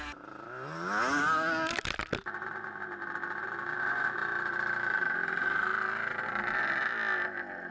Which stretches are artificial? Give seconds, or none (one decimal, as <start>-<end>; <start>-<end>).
none